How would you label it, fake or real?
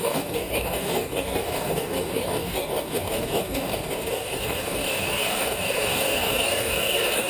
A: fake